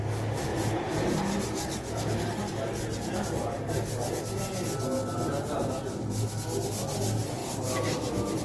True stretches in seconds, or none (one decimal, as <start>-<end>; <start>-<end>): 0.0-0.5; 1.4-7.4